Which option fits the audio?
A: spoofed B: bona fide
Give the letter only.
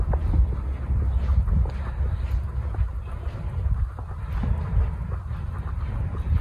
B